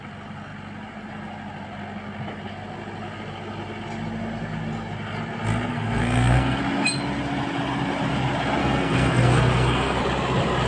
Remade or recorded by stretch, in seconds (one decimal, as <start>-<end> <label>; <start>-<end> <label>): 0.0-5.7 recorded; 5.7-6.6 remade; 6.6-8.6 recorded; 8.6-10.0 remade; 10.0-10.7 recorded